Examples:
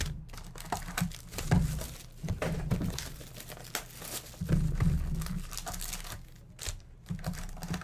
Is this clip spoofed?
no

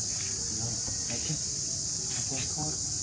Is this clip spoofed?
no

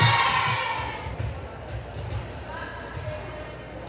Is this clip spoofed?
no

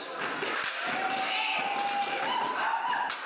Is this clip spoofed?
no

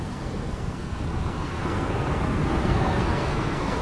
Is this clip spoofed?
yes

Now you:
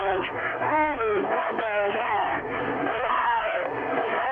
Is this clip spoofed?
yes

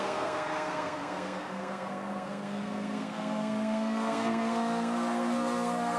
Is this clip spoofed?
yes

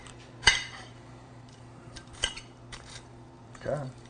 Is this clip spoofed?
yes